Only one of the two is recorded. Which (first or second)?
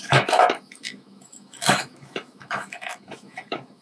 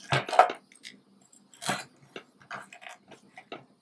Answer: second